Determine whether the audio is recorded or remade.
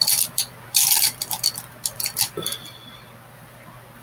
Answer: remade